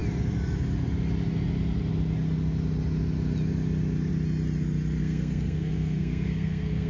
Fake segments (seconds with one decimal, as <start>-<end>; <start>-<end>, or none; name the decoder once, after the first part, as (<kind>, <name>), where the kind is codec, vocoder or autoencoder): 5.0-6.9 (codec, SNAC)